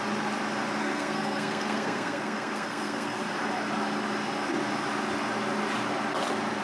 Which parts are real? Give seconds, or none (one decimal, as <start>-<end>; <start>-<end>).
0.0-0.8; 3.2-6.6